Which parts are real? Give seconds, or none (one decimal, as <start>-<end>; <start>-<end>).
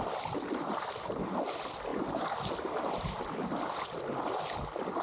0.0-5.0